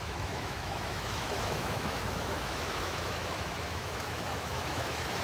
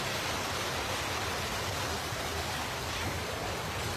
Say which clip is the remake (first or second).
first